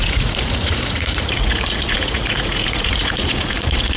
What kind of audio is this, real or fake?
fake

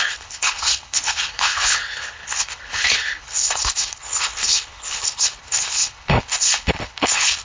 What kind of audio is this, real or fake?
fake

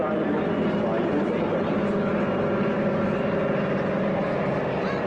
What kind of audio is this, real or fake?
real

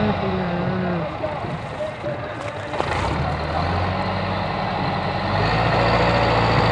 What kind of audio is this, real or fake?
real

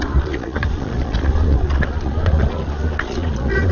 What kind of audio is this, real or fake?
fake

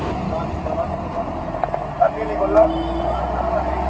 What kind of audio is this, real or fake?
real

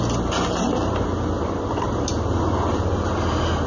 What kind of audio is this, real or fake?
real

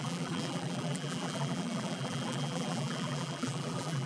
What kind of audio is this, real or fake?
fake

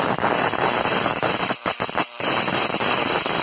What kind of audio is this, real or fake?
real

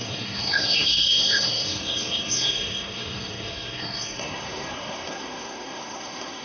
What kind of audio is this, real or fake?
fake